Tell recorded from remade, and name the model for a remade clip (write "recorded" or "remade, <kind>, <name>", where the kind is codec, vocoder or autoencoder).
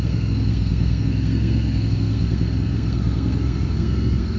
remade, codec, SNAC